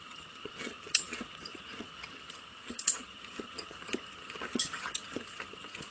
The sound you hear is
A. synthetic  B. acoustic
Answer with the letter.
A